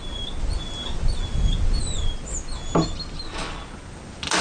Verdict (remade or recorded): recorded